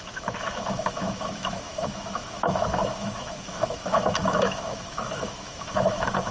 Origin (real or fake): fake